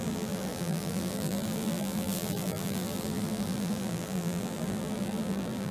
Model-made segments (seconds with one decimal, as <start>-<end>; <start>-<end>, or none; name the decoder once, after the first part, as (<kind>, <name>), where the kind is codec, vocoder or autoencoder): 0.0-5.7 (vocoder, BigVGAN v2)